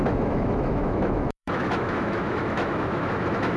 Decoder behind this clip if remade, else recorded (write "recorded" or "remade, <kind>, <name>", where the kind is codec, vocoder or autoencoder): remade, autoencoder, DAC-VAE